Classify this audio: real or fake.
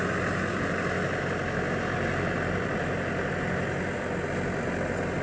real